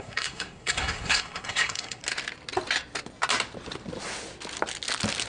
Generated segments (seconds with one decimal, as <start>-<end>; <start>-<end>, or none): 0.0-2.0